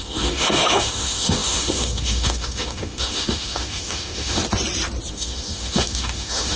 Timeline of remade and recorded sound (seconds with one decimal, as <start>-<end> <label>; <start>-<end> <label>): 0.0-4.4 remade; 4.4-5.1 recorded; 5.1-6.6 remade

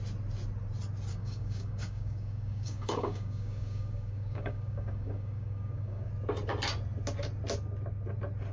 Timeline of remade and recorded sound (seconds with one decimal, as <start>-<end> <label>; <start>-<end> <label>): 0.0-1.1 recorded; 1.1-6.1 remade; 6.1-8.5 recorded

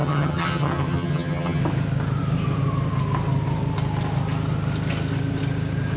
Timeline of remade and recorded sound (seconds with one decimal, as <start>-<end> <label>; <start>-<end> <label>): 0.0-1.6 remade; 1.6-6.0 recorded

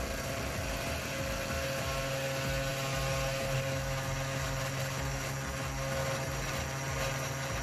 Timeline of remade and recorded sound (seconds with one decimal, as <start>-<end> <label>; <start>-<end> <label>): 0.0-7.6 recorded

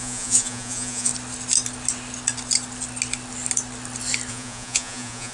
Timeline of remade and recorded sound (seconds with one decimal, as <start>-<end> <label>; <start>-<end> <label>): 0.0-1.1 remade; 1.1-4.3 recorded; 4.3-5.3 remade

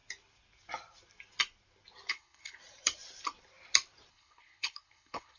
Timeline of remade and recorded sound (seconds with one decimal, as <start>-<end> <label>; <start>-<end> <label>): 0.0-2.1 recorded; 2.1-2.6 remade; 2.6-4.1 recorded; 4.1-5.4 remade

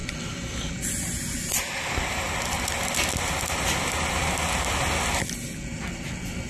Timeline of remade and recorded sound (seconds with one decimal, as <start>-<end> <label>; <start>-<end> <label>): 0.0-6.5 recorded

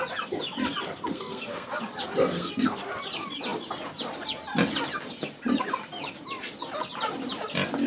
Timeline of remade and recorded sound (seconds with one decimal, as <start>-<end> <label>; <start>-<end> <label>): 0.0-1.1 recorded; 1.1-1.8 remade; 1.8-2.3 recorded; 2.3-2.8 remade; 2.8-7.9 recorded